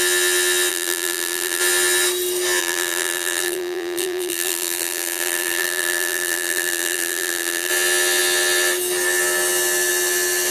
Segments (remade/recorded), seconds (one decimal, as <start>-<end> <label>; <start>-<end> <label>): 0.0-0.7 recorded; 0.7-1.6 remade; 1.6-2.6 recorded; 2.6-7.7 remade; 7.7-10.5 recorded